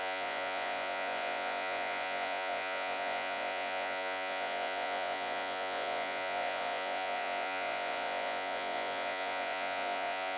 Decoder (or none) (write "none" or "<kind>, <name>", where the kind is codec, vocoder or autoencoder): vocoder, Vocos